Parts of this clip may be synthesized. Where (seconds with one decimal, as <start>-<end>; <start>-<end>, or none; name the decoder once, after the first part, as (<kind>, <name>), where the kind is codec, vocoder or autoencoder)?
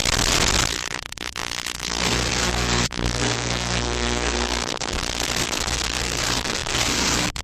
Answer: 0.7-7.4 (codec, SNAC)